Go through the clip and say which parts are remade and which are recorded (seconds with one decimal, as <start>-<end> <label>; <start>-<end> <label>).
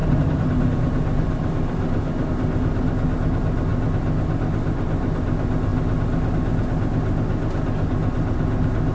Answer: 0.0-8.9 recorded